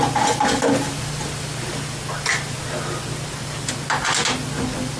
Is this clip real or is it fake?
real